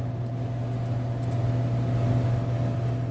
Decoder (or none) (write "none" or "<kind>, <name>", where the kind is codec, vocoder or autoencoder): none